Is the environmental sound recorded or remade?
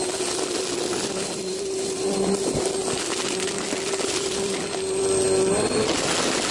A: recorded